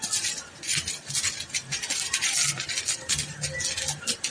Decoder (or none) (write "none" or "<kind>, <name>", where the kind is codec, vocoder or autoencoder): none